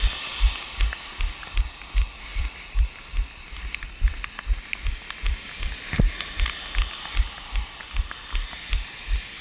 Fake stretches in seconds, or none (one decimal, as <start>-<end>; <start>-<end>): 2.3-3.2

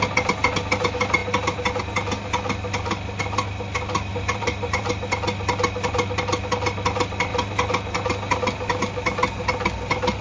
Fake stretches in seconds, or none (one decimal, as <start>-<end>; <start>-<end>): 4.1-4.9

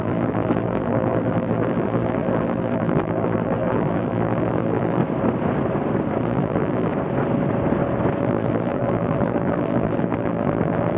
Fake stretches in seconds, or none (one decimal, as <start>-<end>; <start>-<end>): 0.0-5.0; 6.2-6.9; 8.2-11.0

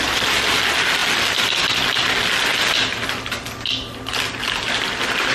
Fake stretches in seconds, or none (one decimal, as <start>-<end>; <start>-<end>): none

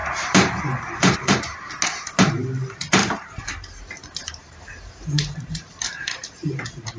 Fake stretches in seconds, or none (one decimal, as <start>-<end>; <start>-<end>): 0.0-1.7; 3.0-3.8; 4.2-6.3

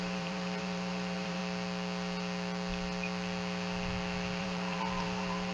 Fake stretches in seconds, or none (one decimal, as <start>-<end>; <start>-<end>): 0.0-1.4; 4.4-5.5

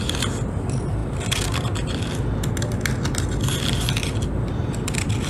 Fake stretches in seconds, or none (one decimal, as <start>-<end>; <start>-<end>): 0.0-1.0; 4.2-5.3

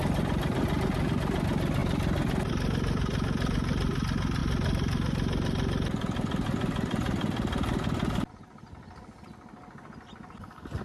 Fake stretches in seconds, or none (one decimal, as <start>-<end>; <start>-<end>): 0.0-0.8; 1.8-2.5; 4.4-8.3